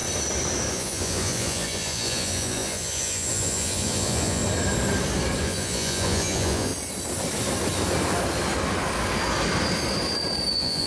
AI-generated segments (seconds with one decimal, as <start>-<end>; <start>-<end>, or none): 0.7-4.4; 5.4-6.7; 10.5-10.9